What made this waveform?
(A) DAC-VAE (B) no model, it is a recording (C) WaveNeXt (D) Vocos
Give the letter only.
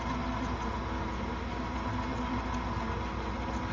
B